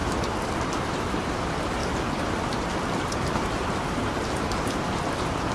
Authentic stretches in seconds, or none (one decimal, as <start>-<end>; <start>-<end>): 0.0-5.5

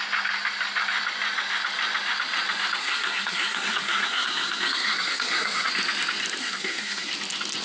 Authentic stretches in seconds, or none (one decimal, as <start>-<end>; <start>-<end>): 0.0-2.8; 5.7-6.4; 7.1-7.6

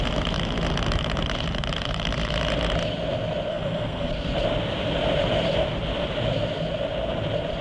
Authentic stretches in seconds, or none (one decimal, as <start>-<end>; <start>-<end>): 0.0-3.5; 4.1-7.6